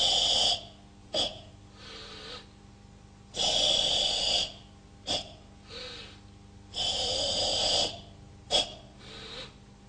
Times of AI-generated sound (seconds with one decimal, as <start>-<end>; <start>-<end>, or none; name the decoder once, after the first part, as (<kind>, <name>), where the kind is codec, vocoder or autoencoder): 1.0-1.5 (vocoder, Vocos)